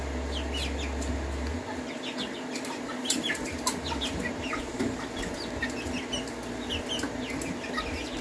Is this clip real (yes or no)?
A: yes